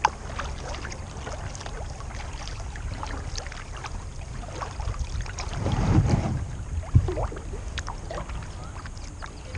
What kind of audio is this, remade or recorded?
recorded